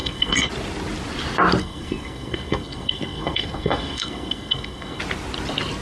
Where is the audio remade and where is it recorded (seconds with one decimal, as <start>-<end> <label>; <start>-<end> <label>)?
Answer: 0.0-0.5 remade; 0.5-1.6 recorded; 1.6-5.0 remade; 5.0-5.8 recorded